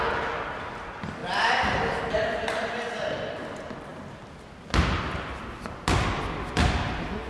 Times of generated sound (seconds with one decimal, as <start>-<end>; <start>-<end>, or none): none